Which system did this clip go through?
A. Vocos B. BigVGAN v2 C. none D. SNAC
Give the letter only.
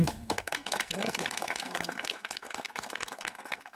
D